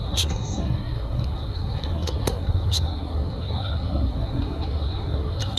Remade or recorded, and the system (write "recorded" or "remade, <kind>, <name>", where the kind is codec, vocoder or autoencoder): remade, codec, SNAC